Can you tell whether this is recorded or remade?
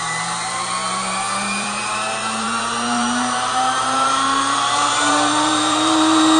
remade